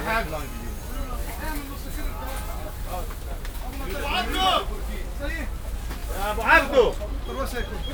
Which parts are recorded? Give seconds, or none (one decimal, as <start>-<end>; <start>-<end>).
0.0-7.9